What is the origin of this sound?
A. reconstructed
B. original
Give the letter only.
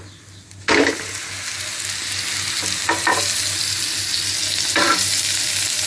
B